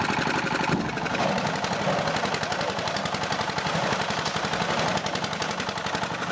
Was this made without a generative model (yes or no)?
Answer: yes